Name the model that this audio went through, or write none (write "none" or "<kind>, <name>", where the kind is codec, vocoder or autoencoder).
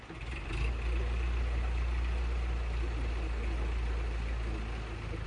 none